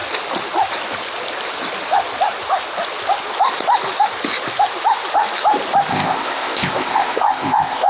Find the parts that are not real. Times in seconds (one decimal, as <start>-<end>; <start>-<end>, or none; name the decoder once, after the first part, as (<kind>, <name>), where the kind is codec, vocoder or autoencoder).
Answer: 5.9-7.9 (codec, ZipCodec)

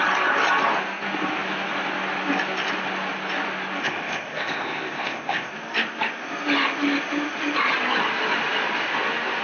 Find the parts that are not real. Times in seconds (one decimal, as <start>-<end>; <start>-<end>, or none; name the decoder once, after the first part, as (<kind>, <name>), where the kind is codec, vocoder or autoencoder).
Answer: 3.8-5.5 (codec, ZipCodec)

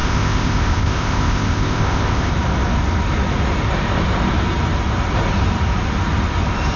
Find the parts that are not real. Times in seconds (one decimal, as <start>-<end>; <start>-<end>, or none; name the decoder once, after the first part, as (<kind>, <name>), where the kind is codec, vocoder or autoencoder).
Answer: 0.0-2.3 (codec, ZipCodec)

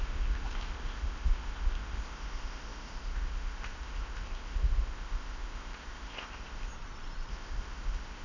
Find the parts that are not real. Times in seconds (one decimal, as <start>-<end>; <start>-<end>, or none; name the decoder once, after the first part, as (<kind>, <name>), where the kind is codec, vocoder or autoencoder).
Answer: 0.0-6.7 (codec, ZipCodec); 7.3-8.2

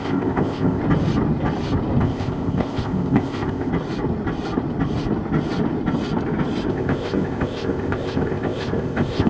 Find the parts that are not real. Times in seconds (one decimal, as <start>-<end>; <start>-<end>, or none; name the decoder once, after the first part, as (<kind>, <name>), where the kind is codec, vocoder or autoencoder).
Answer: 0.0-0.8 (codec, ZipCodec); 2.0-3.7; 6.7-9.3

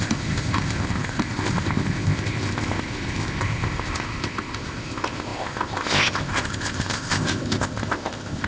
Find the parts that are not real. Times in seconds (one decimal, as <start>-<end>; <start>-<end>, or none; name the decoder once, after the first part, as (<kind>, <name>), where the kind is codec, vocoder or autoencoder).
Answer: 0.0-8.5 (codec, ZipCodec)

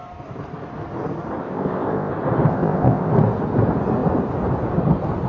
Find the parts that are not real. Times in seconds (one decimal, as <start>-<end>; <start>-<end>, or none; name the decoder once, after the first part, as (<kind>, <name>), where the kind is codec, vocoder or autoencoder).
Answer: 1.4-2.1 (codec, ZipCodec); 2.5-3.1